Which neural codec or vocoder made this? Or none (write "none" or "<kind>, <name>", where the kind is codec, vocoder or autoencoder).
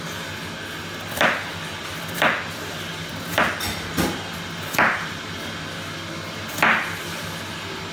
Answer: none